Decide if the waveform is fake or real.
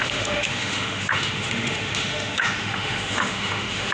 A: fake